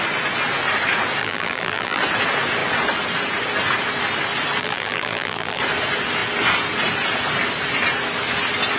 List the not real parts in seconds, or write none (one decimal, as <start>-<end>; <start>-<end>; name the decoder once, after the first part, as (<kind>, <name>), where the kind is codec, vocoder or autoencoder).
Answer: 1.2-2.0 (vocoder, BigVGAN v2); 4.6-5.6